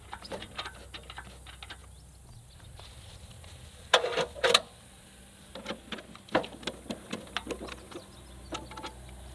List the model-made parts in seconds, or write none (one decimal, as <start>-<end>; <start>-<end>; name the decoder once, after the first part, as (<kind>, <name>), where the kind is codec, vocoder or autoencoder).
none